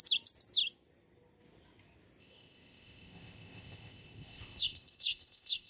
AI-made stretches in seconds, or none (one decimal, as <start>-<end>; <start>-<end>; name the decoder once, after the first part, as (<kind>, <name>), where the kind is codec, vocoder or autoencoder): 2.2-5.7 (codec, ZipCodec)